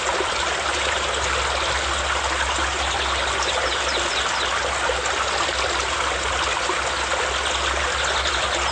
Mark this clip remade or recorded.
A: recorded